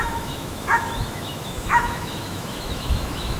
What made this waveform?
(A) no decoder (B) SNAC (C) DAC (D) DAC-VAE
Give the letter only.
D